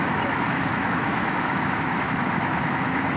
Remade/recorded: remade